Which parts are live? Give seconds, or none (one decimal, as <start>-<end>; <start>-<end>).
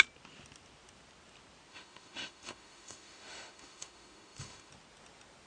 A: 0.0-1.7; 4.7-5.5